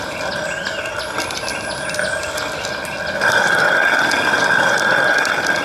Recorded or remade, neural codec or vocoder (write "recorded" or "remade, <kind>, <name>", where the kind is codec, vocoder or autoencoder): recorded